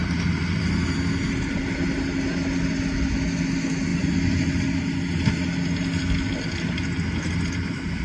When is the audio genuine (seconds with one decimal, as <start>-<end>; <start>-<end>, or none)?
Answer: 0.0-8.0